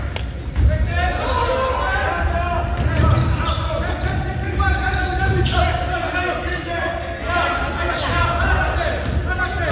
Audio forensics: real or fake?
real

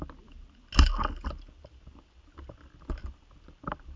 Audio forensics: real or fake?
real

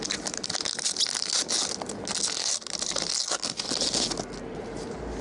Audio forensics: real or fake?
real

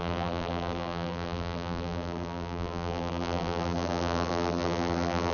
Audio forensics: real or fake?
fake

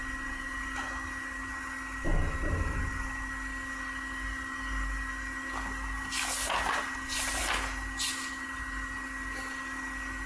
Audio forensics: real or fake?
real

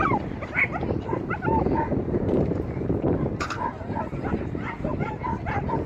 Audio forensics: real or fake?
fake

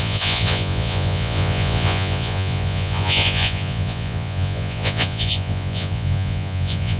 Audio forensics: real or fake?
fake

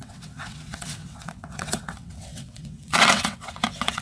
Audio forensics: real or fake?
fake